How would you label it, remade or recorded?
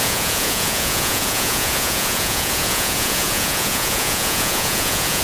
remade